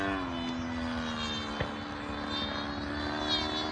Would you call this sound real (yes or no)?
yes